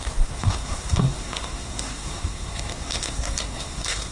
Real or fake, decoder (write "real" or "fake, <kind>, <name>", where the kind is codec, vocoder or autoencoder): fake, codec, SNAC